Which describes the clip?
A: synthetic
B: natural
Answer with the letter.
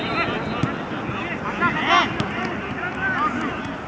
B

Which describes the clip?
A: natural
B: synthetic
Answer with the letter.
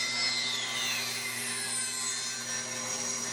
A